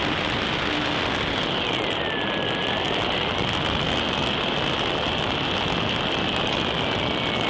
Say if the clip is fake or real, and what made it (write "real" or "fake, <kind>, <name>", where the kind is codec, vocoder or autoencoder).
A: real